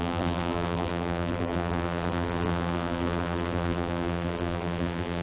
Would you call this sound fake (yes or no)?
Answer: yes